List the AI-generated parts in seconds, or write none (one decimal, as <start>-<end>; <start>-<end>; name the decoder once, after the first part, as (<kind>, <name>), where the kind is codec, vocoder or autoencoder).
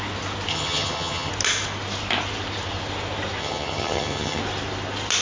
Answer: 0.5-1.3 (vocoder, HiFi-GAN); 3.4-4.4